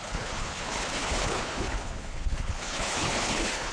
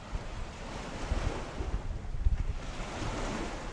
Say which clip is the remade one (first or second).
first